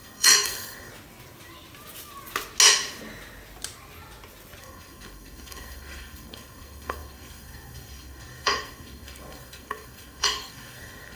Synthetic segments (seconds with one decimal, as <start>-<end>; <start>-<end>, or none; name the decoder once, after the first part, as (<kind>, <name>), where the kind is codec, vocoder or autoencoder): 0.0-0.9 (codec, SNAC); 4.6-11.1